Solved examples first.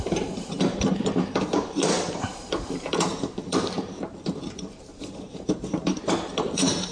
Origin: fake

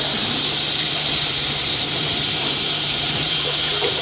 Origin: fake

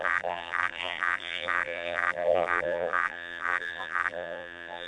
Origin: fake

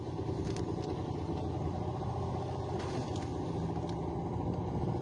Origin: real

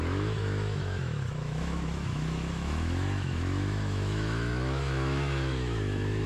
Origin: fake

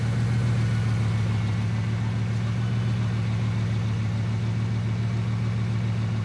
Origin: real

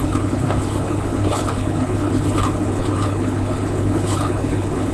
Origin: fake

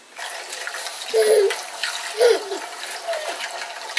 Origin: real